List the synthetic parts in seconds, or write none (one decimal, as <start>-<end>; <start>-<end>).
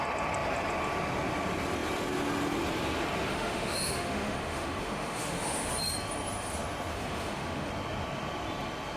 3.3-5.7; 6.9-7.7